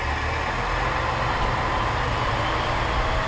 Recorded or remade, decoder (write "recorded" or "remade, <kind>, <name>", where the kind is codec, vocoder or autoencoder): recorded